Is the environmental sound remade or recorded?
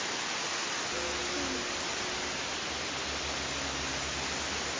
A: recorded